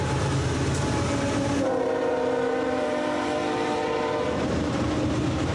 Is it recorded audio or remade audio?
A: remade